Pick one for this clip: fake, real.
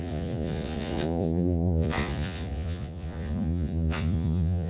fake